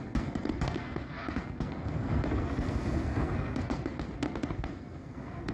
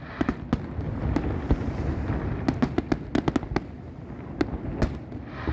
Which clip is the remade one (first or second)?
first